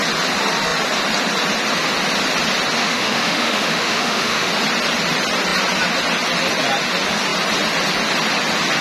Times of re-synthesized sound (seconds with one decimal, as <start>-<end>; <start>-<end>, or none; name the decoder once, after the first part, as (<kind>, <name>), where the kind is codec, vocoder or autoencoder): 2.8-4.5 (autoencoder, DAC-VAE)